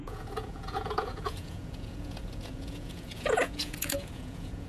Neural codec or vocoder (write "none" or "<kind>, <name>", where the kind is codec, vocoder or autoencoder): vocoder, Vocos